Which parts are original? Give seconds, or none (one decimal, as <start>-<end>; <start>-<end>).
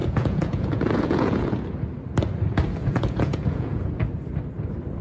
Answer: 1.5-2.8; 3.9-5.0